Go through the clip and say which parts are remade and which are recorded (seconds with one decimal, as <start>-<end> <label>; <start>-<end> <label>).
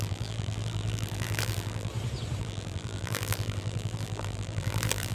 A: 0.0-1.9 remade; 1.9-2.4 recorded; 2.4-5.1 remade